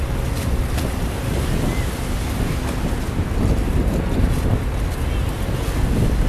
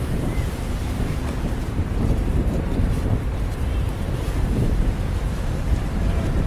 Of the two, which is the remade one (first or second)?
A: second